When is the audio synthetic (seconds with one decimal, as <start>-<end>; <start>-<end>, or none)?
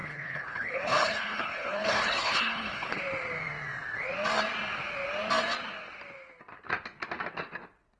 0.0-3.0